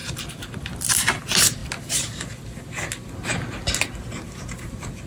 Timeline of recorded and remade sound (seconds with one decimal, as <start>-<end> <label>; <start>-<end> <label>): 0.0-5.1 recorded